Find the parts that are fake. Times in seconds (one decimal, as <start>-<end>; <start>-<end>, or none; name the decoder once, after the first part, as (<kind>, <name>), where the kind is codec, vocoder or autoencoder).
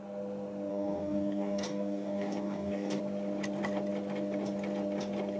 0.7-3.0 (codec, DAC)